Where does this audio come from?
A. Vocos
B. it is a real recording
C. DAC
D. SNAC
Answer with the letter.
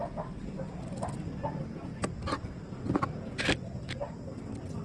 B